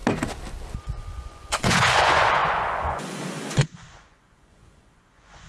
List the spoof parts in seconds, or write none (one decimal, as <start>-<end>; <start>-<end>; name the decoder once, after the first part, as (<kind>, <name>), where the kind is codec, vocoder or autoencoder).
0.8-5.5 (vocoder, Vocos)